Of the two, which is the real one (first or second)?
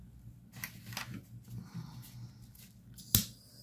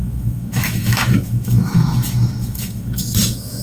first